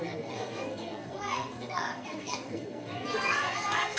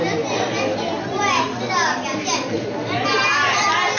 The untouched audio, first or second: second